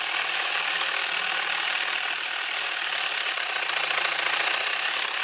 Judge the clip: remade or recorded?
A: remade